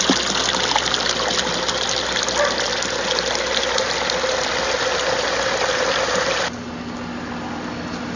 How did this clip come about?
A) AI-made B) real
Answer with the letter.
B